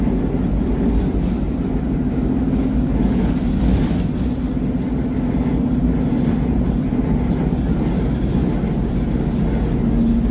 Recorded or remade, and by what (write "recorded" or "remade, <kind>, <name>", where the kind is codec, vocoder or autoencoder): recorded